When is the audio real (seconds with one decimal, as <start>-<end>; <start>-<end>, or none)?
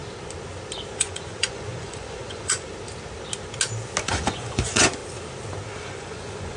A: 0.0-0.9; 2.7-4.0; 5.0-5.8